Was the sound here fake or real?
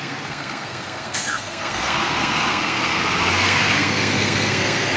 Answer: fake